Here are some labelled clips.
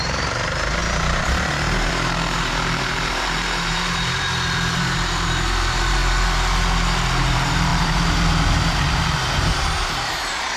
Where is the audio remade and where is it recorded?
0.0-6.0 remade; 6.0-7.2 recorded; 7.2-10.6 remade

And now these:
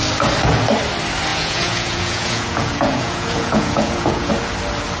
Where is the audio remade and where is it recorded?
0.0-1.3 recorded; 1.3-4.3 remade; 4.3-5.0 recorded